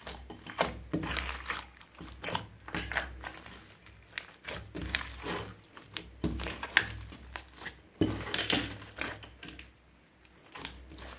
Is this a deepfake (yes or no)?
no